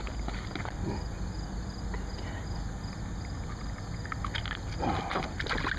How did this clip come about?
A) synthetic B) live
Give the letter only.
B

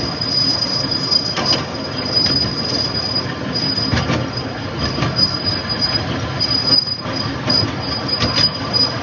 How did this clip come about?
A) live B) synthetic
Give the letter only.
A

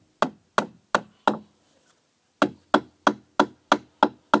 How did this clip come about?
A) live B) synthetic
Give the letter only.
A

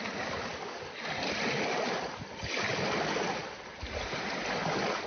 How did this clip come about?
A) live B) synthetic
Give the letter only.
A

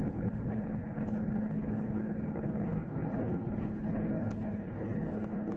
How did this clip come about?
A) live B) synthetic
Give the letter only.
B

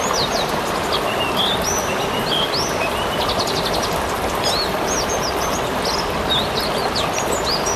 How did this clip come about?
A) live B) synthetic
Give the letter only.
A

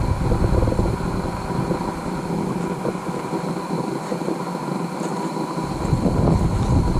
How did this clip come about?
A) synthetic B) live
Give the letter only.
B